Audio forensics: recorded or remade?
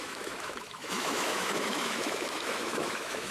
remade